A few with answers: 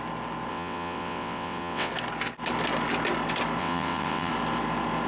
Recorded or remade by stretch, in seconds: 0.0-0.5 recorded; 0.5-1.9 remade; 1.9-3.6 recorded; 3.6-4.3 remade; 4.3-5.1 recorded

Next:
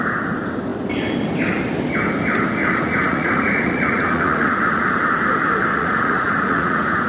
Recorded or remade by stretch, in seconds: 0.0-2.6 recorded; 2.6-4.9 remade; 4.9-5.7 recorded; 5.7-7.1 remade

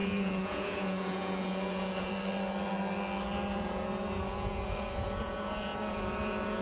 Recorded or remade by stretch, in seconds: 0.0-2.1 remade; 2.1-3.5 recorded; 3.5-6.6 remade

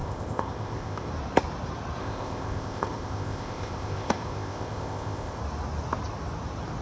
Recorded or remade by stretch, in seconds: 0.0-1.1 remade; 1.1-2.0 recorded; 2.0-5.4 remade; 5.4-6.8 recorded

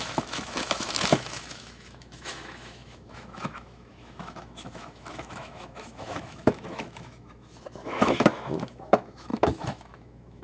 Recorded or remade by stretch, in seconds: 0.0-10.4 remade

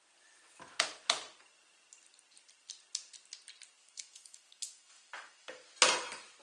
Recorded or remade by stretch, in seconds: 0.0-3.8 recorded; 3.8-5.6 remade; 5.6-6.4 recorded